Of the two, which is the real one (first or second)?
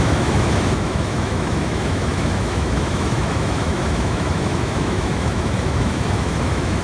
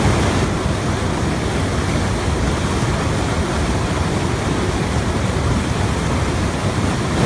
second